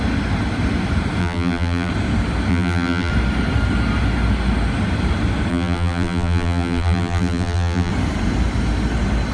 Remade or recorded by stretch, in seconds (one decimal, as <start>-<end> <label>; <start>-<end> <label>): 0.0-1.2 recorded; 1.2-1.9 remade; 1.9-2.5 recorded; 2.5-3.1 remade; 3.1-5.5 recorded; 5.5-7.9 remade; 7.9-9.3 recorded